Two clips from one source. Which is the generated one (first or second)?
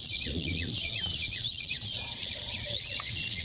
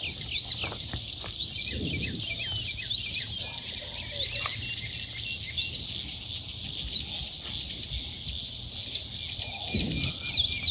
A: first